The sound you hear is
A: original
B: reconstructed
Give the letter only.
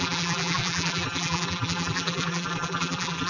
B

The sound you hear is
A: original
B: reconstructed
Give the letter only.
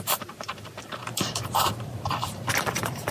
B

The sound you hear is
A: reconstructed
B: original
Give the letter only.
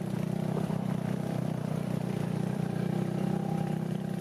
A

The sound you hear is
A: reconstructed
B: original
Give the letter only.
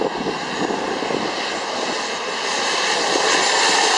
B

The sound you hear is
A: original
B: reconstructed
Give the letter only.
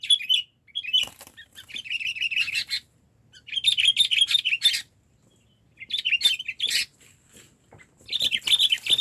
A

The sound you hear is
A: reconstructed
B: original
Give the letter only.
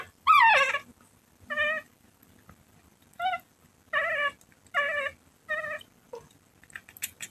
B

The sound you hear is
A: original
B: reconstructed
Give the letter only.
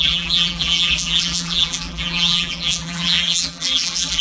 B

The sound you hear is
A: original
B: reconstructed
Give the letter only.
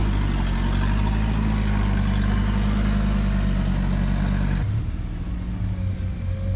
A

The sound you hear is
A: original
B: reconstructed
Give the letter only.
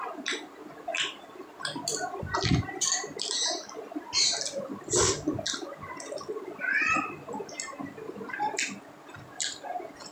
A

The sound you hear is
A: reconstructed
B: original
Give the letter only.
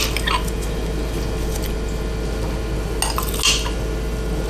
B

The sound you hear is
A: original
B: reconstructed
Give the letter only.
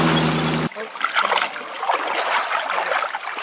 A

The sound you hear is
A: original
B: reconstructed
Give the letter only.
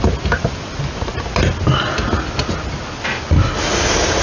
A